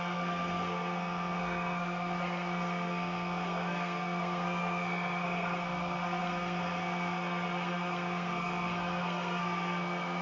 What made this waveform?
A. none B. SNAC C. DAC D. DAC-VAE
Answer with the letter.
B